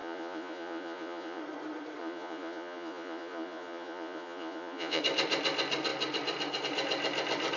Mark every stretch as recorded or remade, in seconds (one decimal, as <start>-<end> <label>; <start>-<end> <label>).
0.0-1.4 remade; 1.4-2.0 recorded; 2.0-5.0 remade; 5.0-7.6 recorded